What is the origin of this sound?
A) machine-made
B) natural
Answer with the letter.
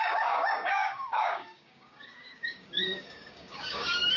A